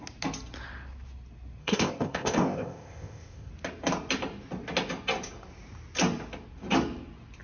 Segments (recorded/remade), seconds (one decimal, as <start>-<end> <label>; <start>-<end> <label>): 0.0-1.6 recorded; 1.6-3.5 remade; 3.5-7.4 recorded